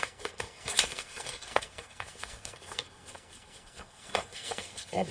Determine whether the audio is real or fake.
fake